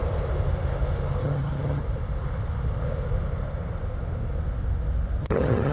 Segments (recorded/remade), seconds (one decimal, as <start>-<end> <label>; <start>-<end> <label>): 0.0-1.2 recorded; 1.2-1.8 remade; 1.8-5.2 recorded; 5.2-5.7 remade